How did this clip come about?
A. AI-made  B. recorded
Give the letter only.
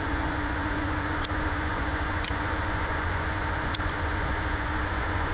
A